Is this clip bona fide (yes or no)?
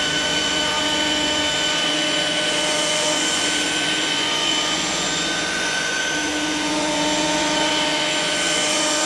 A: no